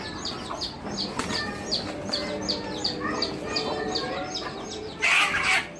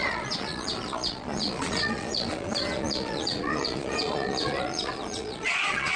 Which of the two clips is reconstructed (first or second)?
second